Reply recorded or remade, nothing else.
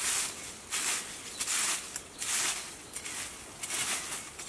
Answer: recorded